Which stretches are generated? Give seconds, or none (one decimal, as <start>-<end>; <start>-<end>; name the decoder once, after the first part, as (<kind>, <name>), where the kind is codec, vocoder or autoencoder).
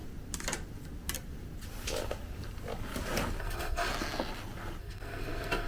3.4-3.9 (codec, SNAC); 4.8-5.7